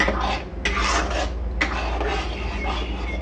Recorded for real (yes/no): yes